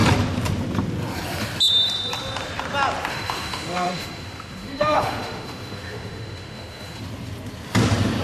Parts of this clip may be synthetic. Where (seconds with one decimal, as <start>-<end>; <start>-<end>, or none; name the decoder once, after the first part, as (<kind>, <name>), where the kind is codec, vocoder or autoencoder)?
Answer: 3.1-7.0 (autoencoder, DAC-VAE)